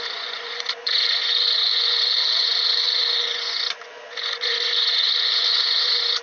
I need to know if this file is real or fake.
fake